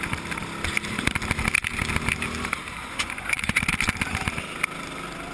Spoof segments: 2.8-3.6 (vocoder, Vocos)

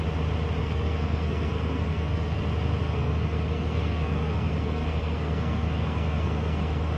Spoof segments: 0.6-2.4 (codec, SNAC); 2.8-7.0

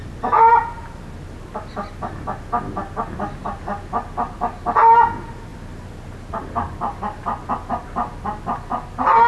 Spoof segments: none

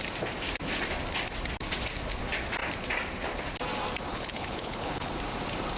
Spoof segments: 4.1-5.1 (codec, HILCodec)

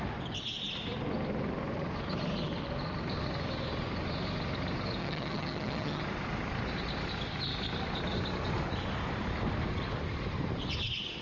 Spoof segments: 5.0-6.0 (vocoder, HiFi-GAN)

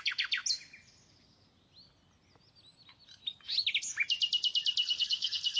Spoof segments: 4.8-5.6 (codec, SNAC)

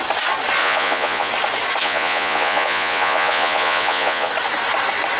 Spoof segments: 0.6-1.3 (vocoder, Vocos); 1.8-4.3